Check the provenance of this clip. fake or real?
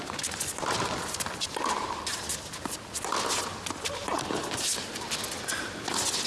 real